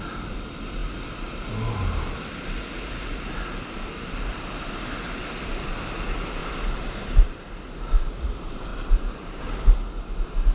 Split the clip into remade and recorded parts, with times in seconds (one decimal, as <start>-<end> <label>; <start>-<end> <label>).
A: 0.0-6.4 recorded; 6.4-7.5 remade; 7.5-8.7 recorded; 8.7-9.4 remade; 9.4-10.5 recorded